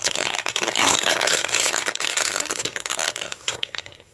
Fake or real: fake